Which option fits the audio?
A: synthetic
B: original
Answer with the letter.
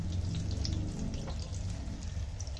B